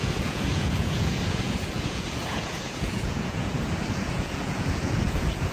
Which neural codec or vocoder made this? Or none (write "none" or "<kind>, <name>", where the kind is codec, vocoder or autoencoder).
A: vocoder, Vocos